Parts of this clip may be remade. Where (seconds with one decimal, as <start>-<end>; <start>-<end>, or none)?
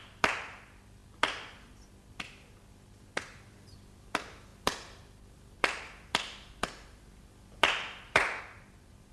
0.0-9.1